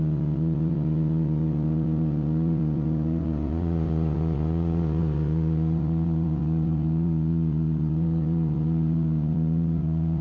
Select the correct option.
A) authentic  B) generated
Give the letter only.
B